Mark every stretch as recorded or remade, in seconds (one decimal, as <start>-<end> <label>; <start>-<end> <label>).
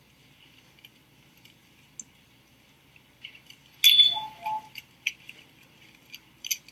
0.0-6.7 recorded